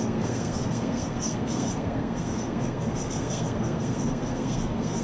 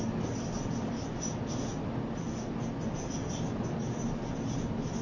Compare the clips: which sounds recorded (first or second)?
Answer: second